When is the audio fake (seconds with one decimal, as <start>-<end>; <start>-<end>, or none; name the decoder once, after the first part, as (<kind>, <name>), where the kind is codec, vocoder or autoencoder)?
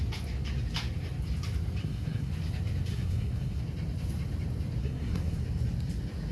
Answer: 1.8-2.3 (codec, SNAC); 2.9-3.6; 4.8-5.4